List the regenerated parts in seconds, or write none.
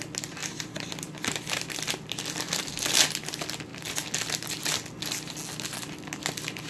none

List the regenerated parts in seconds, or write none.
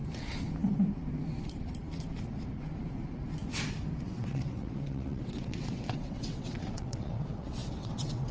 4.0-8.3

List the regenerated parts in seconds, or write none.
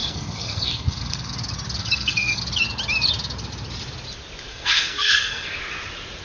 0.0-1.3; 1.8-2.4; 4.5-5.6